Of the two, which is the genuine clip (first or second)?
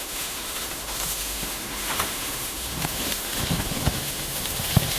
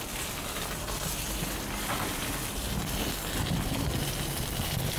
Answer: second